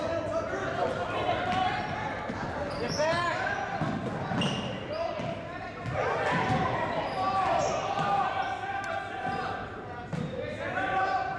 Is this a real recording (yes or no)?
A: yes